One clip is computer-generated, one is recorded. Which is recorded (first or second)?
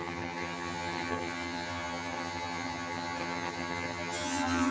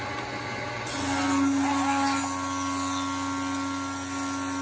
second